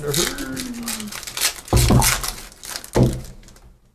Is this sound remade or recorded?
recorded